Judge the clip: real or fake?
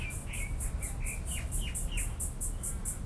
real